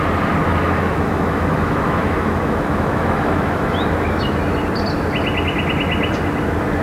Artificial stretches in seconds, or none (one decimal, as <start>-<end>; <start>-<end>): 0.5-4.4